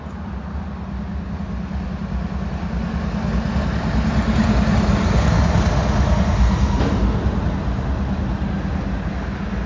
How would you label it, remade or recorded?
recorded